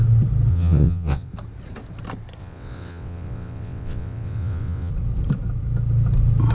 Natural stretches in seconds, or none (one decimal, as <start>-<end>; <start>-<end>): 0.0-0.5; 1.3-2.4; 4.9-6.5